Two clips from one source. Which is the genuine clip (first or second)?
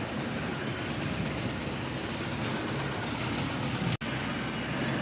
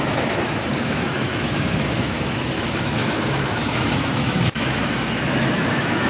first